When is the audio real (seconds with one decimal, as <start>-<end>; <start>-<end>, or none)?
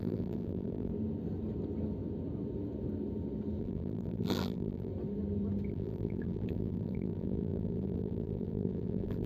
0.9-3.6; 4.9-5.7